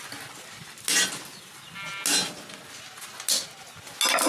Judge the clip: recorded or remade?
recorded